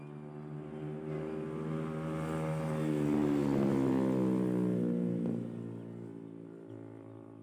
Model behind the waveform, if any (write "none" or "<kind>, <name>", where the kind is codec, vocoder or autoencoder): none